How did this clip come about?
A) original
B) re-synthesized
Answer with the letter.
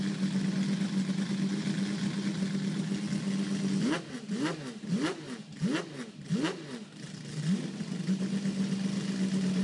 A